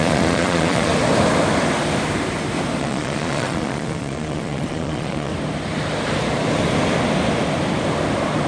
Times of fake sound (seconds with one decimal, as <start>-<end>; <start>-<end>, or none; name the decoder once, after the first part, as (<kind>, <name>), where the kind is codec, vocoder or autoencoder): 0.0-0.9 (vocoder, Vocos); 2.8-5.3